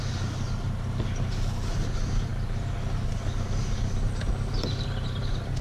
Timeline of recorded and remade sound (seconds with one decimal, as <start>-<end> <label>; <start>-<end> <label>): 0.0-5.6 recorded